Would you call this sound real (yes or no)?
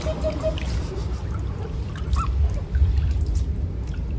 yes